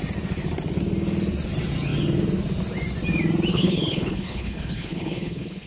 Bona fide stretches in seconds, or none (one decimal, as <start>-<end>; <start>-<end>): 0.0-3.5